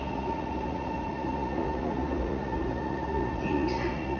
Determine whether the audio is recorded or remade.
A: remade